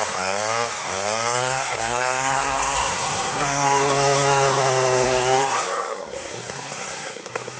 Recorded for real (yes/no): no